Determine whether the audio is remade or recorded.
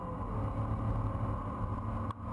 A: recorded